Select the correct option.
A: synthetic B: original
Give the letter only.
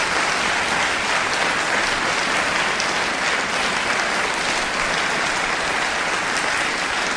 B